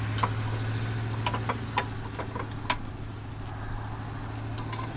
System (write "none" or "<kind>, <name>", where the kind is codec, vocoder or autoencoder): none